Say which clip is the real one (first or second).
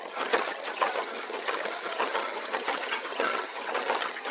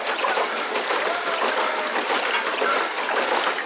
second